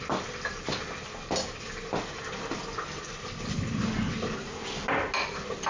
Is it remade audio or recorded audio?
recorded